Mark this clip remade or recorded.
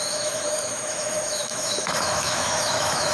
remade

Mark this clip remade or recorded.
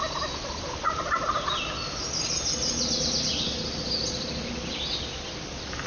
recorded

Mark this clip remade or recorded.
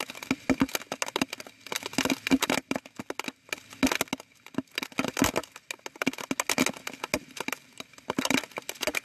recorded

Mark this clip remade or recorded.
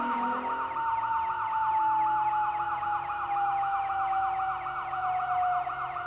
recorded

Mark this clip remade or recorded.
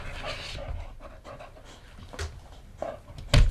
recorded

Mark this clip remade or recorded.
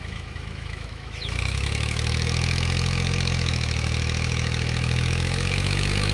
remade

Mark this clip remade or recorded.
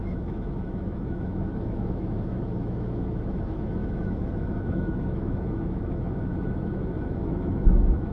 remade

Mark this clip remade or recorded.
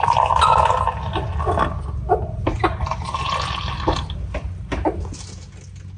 recorded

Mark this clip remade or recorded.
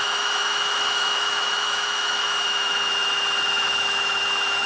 remade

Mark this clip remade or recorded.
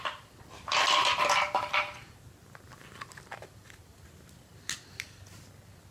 recorded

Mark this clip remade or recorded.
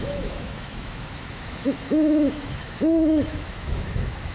remade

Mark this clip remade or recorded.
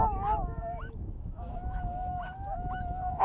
remade